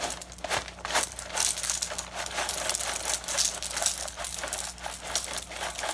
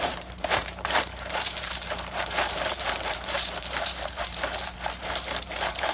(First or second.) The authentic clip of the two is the first